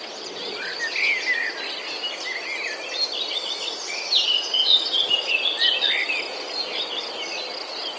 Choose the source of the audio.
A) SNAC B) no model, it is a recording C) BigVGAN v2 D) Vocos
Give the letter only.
B